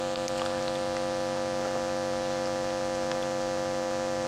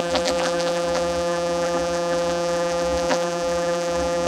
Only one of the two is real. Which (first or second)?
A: first